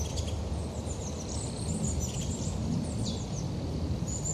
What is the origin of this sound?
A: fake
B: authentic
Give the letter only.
B